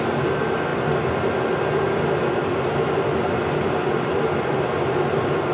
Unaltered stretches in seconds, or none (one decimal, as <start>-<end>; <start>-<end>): 0.0-5.5